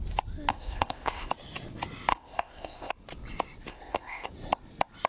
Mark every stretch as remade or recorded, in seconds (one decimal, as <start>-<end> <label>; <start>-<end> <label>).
0.0-0.5 recorded; 0.5-1.3 remade; 1.3-2.1 recorded; 2.1-2.9 remade; 2.9-3.7 recorded; 3.7-4.3 remade; 4.3-5.1 recorded